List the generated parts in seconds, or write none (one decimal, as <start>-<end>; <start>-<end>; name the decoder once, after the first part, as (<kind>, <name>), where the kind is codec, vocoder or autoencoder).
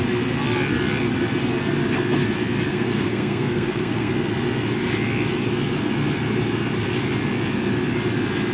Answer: 2.7-4.1 (codec, SNAC)